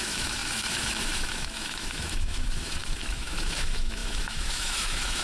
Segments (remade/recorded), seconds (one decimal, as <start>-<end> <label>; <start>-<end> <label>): 0.0-5.2 remade